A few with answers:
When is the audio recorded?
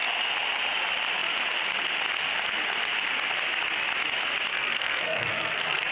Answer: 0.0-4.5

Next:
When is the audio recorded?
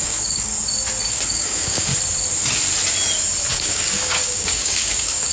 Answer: 0.5-1.1; 1.9-3.5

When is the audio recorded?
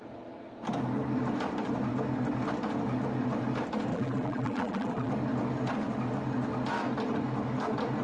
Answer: 0.0-3.9; 5.1-8.0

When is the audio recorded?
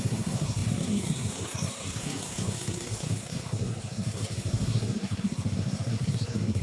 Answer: none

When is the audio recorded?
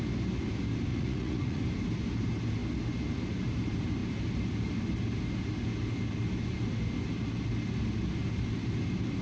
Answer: 0.0-0.9; 1.6-9.2